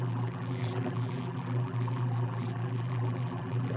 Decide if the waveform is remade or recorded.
remade